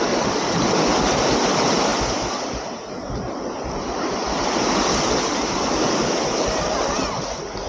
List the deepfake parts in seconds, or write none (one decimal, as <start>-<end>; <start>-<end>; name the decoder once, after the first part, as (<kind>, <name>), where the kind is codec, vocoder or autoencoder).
none